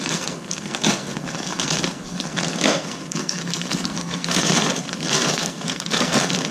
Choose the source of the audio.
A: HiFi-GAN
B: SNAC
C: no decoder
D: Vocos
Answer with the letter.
B